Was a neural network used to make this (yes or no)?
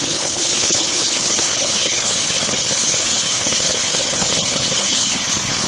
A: yes